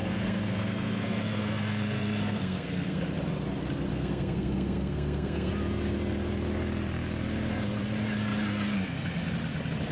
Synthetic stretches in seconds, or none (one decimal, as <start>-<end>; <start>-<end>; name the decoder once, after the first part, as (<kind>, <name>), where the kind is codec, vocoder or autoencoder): 0.0-3.0 (codec, SNAC); 3.9-5.5